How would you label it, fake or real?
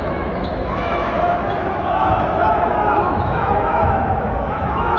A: fake